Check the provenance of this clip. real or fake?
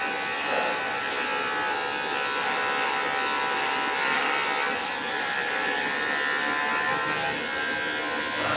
real